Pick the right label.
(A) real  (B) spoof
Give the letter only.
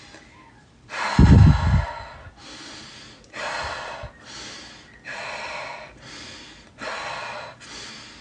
A